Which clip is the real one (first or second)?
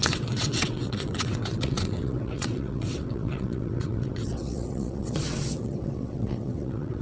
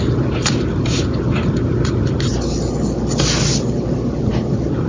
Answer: second